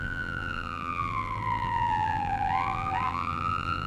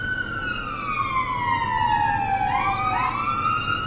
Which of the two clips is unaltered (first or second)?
second